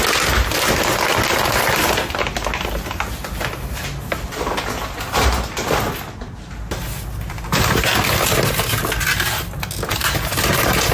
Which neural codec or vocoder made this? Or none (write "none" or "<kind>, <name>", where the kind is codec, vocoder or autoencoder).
none